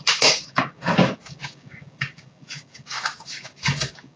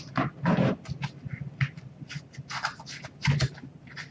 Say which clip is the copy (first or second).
first